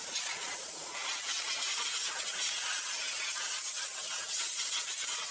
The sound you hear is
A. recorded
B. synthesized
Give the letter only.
A